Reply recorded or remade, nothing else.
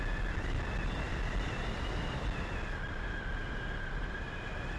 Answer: recorded